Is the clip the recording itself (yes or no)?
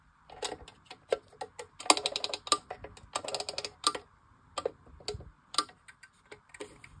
yes